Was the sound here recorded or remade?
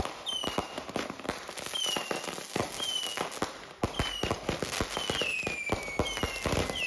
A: recorded